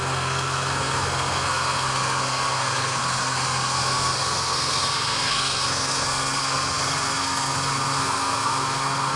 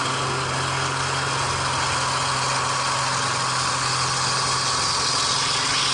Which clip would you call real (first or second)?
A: second